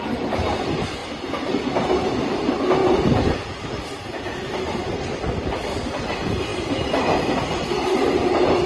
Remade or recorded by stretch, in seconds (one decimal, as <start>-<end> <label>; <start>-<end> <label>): 0.0-2.8 recorded; 2.8-4.2 remade; 4.2-6.5 recorded; 6.5-8.2 remade; 8.2-8.7 recorded